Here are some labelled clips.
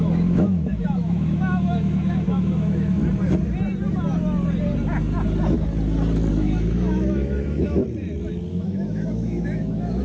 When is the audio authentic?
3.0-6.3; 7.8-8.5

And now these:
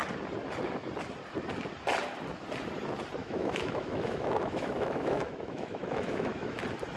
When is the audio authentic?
0.0-3.2; 6.6-7.0

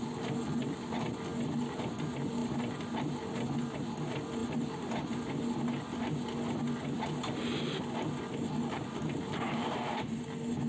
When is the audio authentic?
0.0-10.7

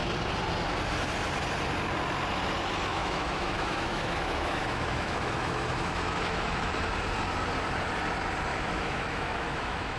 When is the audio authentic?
0.0-2.9; 6.7-8.5

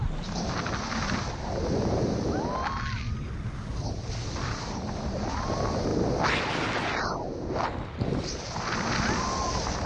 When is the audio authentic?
0.0-9.9

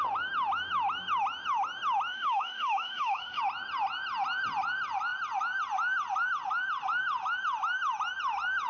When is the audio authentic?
0.0-2.1; 3.4-8.7